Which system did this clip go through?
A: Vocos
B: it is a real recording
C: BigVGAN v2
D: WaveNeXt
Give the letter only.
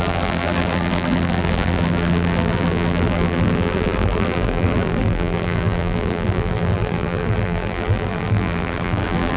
C